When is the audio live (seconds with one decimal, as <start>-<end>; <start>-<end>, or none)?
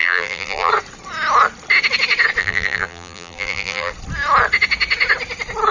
0.7-2.4; 3.9-5.7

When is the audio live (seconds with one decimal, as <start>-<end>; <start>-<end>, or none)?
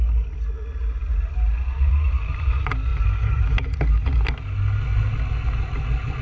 0.0-6.2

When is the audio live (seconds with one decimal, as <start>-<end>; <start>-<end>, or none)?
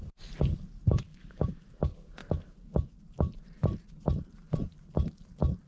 0.0-1.1; 1.7-2.2; 4.8-5.7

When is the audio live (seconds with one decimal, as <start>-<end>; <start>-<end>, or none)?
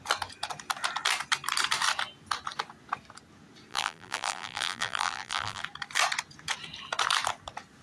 0.0-3.7; 5.6-7.8